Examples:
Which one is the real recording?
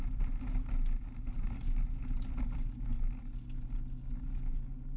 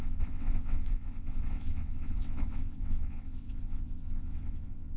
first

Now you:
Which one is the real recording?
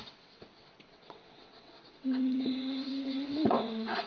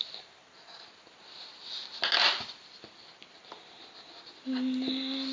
second